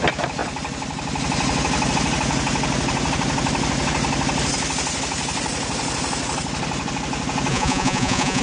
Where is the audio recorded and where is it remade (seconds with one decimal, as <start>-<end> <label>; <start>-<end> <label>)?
0.0-7.5 recorded; 7.5-8.4 remade